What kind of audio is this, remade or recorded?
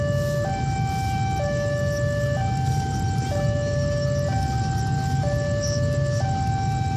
recorded